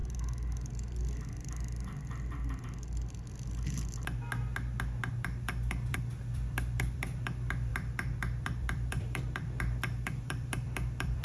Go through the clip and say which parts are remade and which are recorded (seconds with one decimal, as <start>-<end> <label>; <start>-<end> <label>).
0.0-5.1 recorded; 5.1-11.2 remade